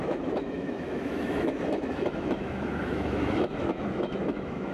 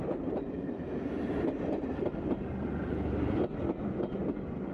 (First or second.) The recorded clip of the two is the second